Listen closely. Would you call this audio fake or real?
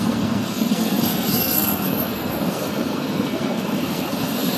fake